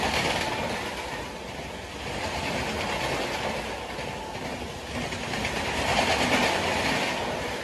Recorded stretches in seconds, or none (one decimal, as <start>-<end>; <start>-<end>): 0.0-7.6